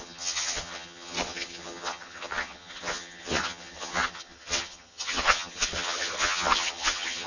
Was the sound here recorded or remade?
remade